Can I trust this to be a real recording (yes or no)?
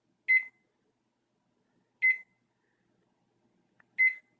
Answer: yes